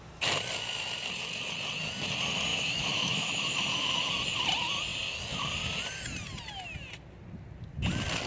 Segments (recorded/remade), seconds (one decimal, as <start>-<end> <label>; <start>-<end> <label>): 0.0-2.5 recorded; 2.5-4.1 remade; 4.1-8.3 recorded